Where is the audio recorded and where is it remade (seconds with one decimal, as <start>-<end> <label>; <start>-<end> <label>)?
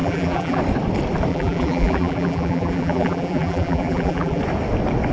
0.0-0.6 remade; 0.6-1.3 recorded; 1.3-4.4 remade; 4.4-5.1 recorded